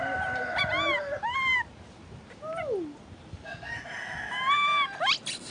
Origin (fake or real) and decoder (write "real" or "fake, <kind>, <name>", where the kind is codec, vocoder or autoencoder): real